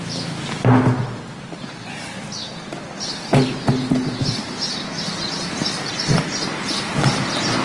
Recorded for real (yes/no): yes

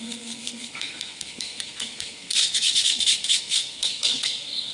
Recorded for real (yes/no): no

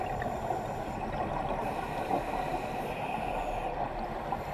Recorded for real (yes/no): yes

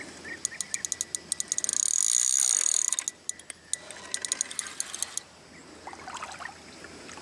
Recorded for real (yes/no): yes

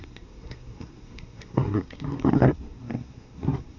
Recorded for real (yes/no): no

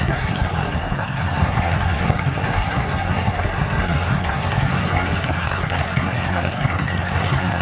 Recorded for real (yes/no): no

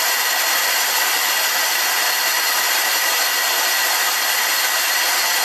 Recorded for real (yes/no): yes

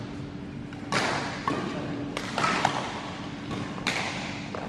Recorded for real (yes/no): yes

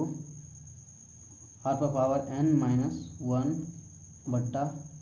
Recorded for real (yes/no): yes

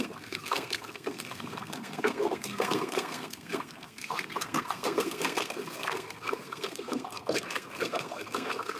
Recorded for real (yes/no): no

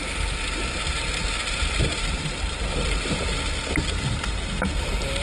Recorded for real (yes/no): yes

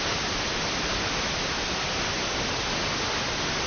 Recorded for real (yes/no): yes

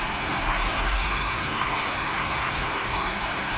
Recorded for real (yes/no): no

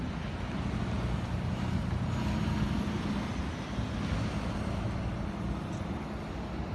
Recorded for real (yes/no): yes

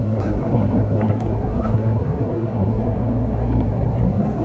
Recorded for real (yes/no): no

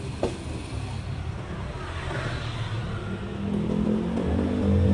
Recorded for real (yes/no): yes